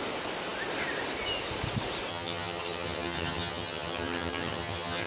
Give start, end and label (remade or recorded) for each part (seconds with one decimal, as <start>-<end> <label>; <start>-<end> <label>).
0.0-2.1 recorded; 2.1-5.1 remade